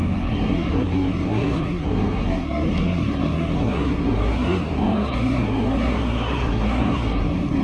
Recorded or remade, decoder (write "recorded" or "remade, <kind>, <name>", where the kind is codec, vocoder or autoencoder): remade, codec, SNAC